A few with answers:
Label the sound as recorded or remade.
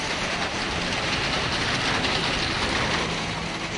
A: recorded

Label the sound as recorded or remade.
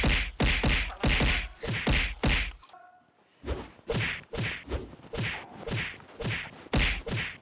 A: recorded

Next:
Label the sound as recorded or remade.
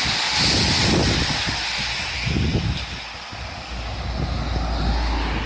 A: recorded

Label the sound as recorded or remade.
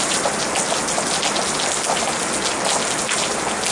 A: recorded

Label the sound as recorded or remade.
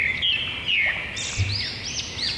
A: recorded